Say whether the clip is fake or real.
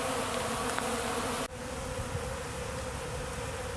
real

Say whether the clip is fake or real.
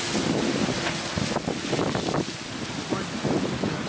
real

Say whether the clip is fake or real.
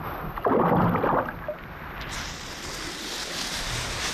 real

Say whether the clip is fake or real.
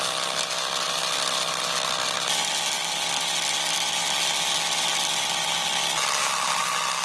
real